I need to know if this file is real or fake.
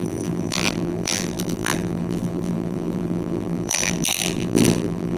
fake